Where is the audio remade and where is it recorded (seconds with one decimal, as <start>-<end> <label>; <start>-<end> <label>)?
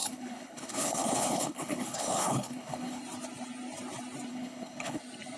0.0-3.0 remade; 3.0-4.3 recorded; 4.3-5.0 remade; 5.0-5.4 recorded